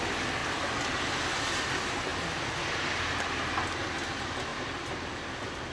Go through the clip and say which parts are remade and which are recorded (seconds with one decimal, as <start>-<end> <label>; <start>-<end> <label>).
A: 0.0-4.5 recorded; 4.5-5.2 remade; 5.2-5.7 recorded